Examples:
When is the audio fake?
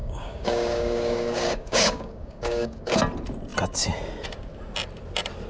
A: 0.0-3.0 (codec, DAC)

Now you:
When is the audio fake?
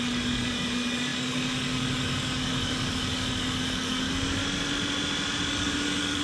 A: 0.0-4.4 (codec, DAC); 5.5-6.2